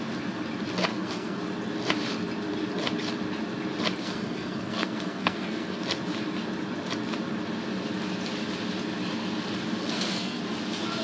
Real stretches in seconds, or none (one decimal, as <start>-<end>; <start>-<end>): 0.0-0.9; 1.4-4.0; 5.8-9.8; 10.4-11.0